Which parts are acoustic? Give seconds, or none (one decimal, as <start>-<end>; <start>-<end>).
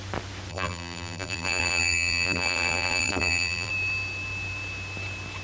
0.0-0.5; 3.7-5.4